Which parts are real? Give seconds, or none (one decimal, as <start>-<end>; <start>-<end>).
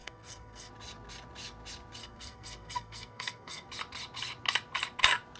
0.7-2.0; 3.7-5.4